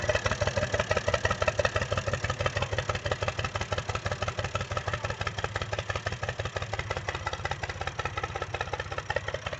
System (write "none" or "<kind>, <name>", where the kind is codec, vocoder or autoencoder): none